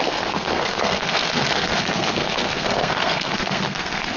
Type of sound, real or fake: fake